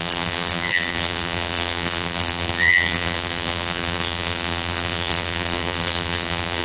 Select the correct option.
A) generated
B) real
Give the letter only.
A